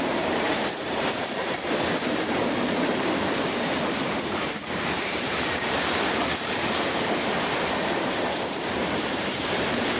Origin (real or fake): fake